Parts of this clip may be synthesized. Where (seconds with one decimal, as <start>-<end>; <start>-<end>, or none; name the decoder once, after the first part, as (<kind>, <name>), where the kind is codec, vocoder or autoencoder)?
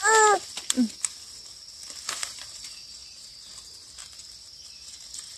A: none